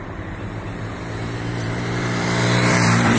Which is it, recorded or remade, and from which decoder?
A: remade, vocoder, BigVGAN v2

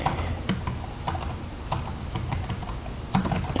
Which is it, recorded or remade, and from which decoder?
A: recorded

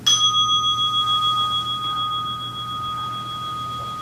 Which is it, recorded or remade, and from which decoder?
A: recorded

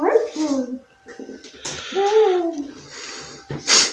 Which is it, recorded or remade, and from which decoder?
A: recorded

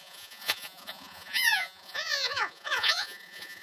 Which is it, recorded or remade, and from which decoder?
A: remade, vocoder, Vocos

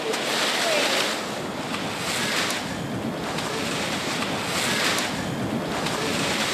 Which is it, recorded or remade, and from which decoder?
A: recorded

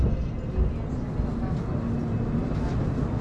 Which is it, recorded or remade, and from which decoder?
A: recorded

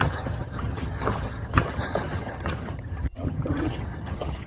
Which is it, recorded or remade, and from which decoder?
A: remade, vocoder, HiFi-GAN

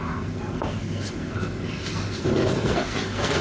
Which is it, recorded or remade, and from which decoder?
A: remade, codec, SNAC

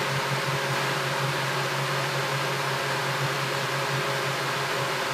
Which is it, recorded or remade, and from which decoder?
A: recorded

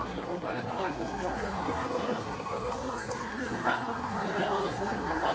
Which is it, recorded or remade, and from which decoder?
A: remade, codec, SNAC